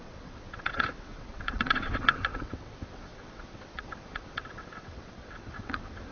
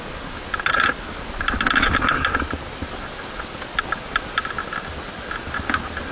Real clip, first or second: second